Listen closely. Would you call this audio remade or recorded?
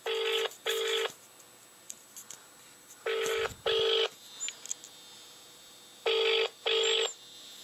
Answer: recorded